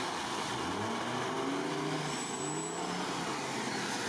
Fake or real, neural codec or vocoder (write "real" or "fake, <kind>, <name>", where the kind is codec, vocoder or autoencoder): real